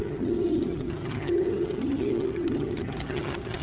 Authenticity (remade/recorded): remade